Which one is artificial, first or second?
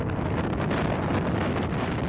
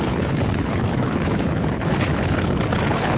second